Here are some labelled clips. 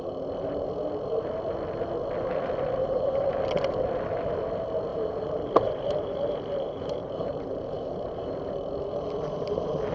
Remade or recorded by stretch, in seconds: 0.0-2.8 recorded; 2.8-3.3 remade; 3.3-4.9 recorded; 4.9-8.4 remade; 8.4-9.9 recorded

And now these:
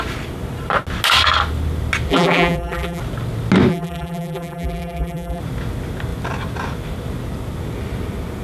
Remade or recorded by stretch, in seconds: 0.0-2.1 recorded; 2.1-3.0 remade; 3.0-3.7 recorded; 3.7-5.4 remade; 5.4-8.4 recorded

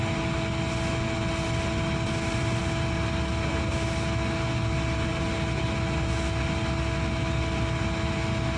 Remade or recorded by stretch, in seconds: 0.0-8.6 recorded

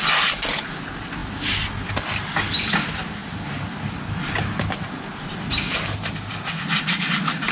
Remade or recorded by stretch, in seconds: 0.0-7.5 recorded

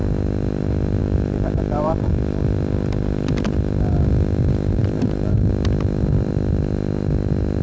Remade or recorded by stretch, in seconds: 0.0-1.0 recorded; 1.0-2.1 remade; 2.1-4.8 recorded; 4.8-5.5 remade; 5.5-7.6 recorded

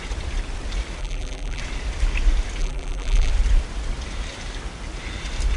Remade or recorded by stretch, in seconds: 0.0-1.0 recorded; 1.0-1.6 remade; 1.6-2.6 recorded; 2.6-3.3 remade; 3.3-5.6 recorded

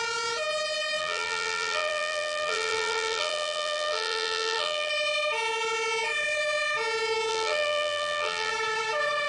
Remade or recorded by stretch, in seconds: 0.0-1.0 recorded; 1.0-4.9 remade; 4.9-7.3 recorded; 7.3-8.5 remade; 8.5-9.3 recorded